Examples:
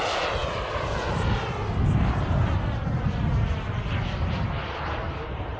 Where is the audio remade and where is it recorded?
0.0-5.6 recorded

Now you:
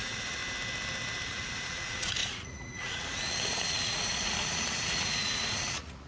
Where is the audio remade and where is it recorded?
0.0-0.4 remade; 0.4-1.3 recorded; 1.3-6.1 remade

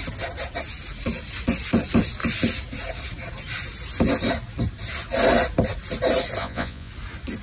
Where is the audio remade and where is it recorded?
0.0-6.4 recorded; 6.4-6.9 remade; 6.9-7.4 recorded

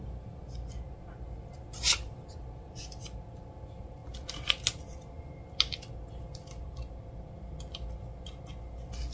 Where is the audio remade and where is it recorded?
0.0-9.1 recorded

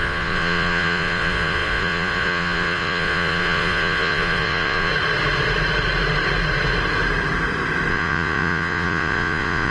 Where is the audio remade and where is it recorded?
0.0-4.9 remade; 4.9-7.9 recorded; 7.9-9.7 remade

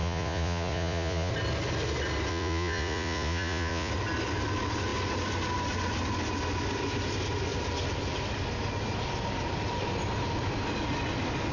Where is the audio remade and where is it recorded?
0.0-1.3 remade; 1.3-2.3 recorded; 2.3-3.9 remade; 3.9-11.5 recorded

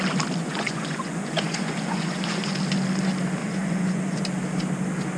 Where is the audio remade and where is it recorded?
0.0-0.4 recorded; 0.4-2.5 remade; 2.5-3.4 recorded; 3.4-4.2 remade; 4.2-5.2 recorded

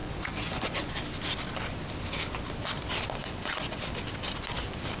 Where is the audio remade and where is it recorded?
0.0-0.9 remade; 0.9-3.2 recorded; 3.2-3.8 remade; 3.8-5.0 recorded